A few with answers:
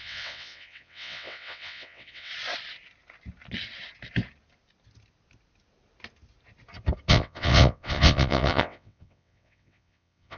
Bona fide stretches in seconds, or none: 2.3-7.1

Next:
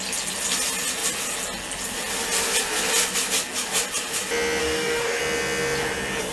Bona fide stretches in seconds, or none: 0.0-4.6; 5.2-6.3

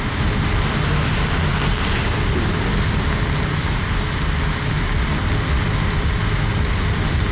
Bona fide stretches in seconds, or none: 0.0-7.3